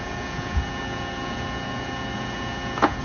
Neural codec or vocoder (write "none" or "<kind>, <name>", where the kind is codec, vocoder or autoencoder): vocoder, Vocos